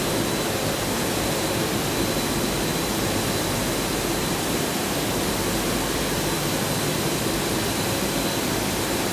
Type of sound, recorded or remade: recorded